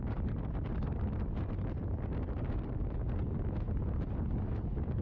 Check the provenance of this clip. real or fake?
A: real